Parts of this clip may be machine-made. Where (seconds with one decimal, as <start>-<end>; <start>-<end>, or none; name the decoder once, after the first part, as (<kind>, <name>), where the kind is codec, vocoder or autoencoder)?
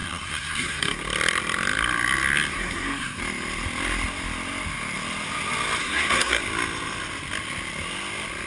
0.0-1.0 (codec, SNAC); 2.5-3.2; 5.8-6.4